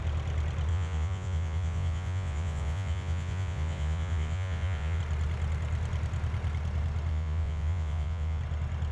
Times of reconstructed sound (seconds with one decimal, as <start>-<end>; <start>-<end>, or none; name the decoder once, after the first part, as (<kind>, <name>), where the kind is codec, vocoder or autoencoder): 0.7-5.0 (vocoder, Vocos); 7.1-8.4